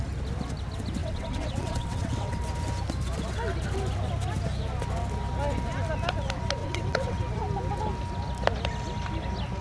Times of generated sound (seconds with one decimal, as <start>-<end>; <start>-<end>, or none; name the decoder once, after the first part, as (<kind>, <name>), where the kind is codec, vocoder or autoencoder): 1.0-2.4 (vocoder, WaveNeXt); 6.6-7.2